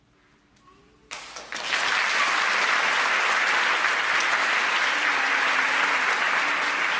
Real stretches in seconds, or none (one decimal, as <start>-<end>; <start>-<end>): 0.0-7.0